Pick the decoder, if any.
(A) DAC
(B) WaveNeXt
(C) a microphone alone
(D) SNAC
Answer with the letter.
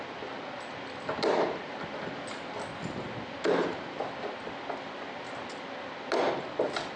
C